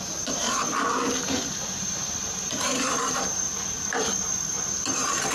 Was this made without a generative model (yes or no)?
no